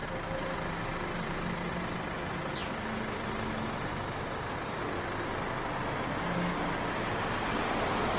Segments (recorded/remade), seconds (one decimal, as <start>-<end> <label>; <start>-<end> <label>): 0.0-8.2 recorded